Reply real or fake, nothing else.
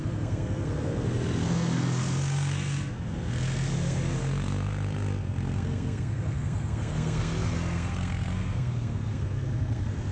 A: fake